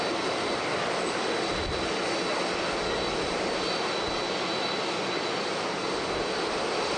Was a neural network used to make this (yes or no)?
no